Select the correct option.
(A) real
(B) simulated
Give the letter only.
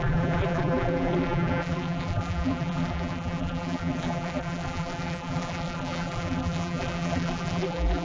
B